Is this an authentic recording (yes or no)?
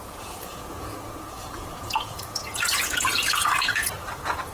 no